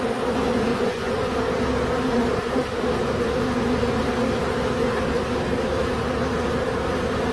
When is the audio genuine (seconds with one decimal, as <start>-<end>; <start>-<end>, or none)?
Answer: 0.0-0.7; 1.3-7.3